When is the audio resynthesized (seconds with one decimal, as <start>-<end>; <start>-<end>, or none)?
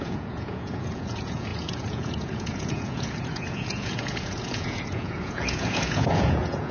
0.0-6.7